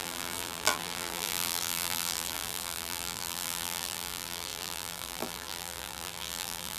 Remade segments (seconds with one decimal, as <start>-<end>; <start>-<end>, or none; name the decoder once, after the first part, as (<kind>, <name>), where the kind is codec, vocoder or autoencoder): 0.0-6.8 (vocoder, BigVGAN v2)